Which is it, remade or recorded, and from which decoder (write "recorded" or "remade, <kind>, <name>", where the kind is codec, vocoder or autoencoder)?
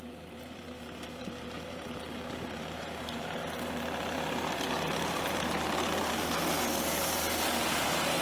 remade, vocoder, BigVGAN v2